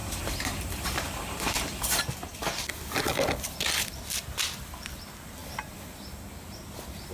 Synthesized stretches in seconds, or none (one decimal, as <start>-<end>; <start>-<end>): 0.0-2.0

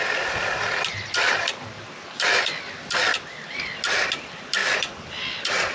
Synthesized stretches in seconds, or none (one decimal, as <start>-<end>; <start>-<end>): 0.0-3.1; 4.1-5.7

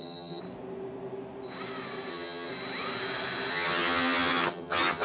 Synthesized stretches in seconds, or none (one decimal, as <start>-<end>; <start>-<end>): 0.0-0.4; 2.1-2.5; 3.5-5.0

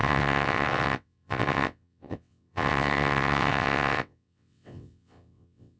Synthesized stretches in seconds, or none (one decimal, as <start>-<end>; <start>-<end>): 0.0-5.8